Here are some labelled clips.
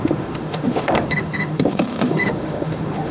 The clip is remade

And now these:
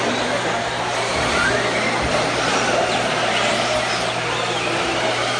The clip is recorded